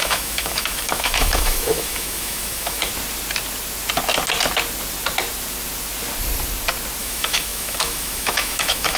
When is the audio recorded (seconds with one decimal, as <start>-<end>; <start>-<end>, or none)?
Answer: 2.9-7.0